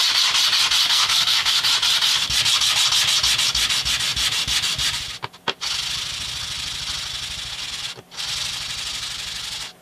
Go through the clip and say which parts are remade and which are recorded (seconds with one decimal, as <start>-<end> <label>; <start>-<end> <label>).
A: 0.0-0.9 recorded; 0.9-1.6 remade; 1.6-9.8 recorded